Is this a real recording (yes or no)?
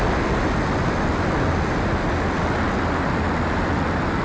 yes